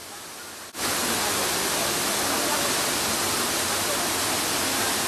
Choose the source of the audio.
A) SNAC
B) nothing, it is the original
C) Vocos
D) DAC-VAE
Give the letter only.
B